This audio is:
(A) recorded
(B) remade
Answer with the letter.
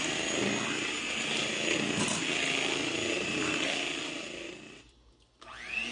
A